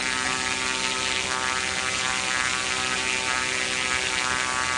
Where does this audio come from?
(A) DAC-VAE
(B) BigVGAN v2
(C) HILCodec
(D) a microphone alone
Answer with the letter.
D